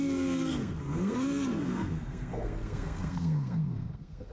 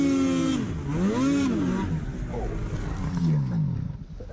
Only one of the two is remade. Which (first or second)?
first